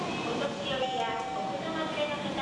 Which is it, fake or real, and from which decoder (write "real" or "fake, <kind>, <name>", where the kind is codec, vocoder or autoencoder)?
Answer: real